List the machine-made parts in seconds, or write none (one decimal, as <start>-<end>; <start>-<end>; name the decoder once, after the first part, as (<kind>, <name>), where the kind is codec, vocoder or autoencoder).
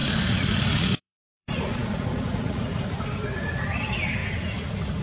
0.0-3.0 (vocoder, Vocos)